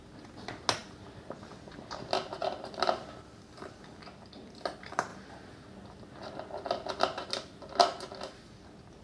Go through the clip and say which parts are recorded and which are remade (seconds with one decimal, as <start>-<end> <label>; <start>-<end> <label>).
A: 0.0-2.4 recorded; 2.4-3.1 remade; 3.1-9.0 recorded